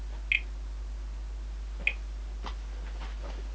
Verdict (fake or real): real